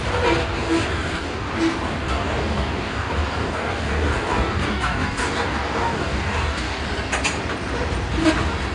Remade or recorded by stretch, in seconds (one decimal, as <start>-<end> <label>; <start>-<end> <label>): 0.0-0.4 recorded; 0.4-1.5 remade; 1.5-2.0 recorded; 2.0-6.8 remade; 6.8-8.7 recorded